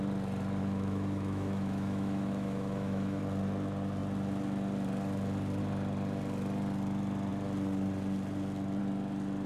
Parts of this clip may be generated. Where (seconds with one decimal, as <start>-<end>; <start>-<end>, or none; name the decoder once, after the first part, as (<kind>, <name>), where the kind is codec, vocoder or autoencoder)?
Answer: 0.6-3.2 (autoencoder, DAC-VAE)